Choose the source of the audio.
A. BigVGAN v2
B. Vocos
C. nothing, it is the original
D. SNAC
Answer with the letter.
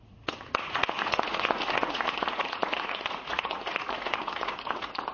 B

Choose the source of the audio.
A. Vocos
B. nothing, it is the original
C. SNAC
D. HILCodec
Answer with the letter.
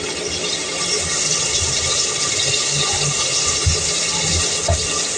B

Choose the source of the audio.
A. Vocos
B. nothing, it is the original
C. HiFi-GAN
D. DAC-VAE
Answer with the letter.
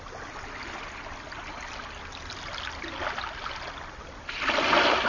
B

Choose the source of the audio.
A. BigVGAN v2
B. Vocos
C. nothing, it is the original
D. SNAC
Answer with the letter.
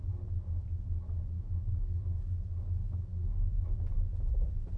C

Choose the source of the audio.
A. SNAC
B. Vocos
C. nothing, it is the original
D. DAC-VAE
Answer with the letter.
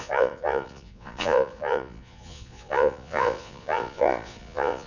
B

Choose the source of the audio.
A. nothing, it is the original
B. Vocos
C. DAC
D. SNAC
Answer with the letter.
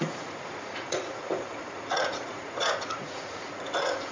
B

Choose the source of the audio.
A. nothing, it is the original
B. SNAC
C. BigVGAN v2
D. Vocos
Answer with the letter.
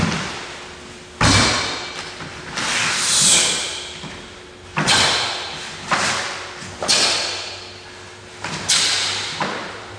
A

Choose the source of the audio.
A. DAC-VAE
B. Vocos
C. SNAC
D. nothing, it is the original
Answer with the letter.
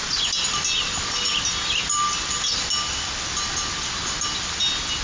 D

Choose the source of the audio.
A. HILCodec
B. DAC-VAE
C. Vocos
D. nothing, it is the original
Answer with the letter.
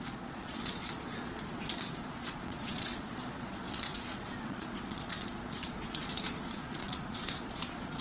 C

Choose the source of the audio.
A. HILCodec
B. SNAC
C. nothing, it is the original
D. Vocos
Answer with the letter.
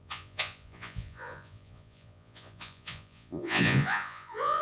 D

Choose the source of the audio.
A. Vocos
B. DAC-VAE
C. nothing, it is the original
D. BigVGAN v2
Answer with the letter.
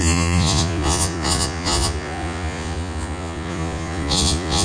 A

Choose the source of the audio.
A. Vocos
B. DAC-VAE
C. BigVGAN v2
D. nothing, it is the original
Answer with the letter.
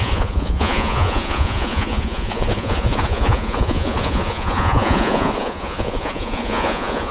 A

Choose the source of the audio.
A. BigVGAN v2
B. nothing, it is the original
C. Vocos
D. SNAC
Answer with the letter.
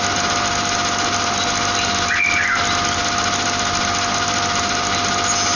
B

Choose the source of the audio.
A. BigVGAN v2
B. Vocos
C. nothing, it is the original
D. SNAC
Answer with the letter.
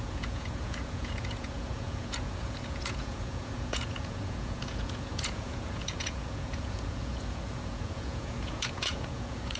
B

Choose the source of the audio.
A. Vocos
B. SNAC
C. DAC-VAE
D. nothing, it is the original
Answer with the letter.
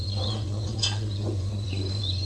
A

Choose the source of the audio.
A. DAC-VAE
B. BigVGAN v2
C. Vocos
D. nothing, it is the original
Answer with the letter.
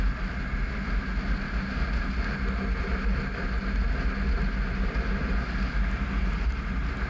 D